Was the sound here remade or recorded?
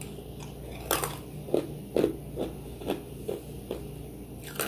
recorded